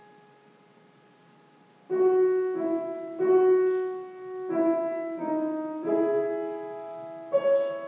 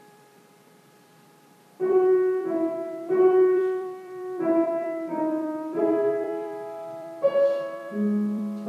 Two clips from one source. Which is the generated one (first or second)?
second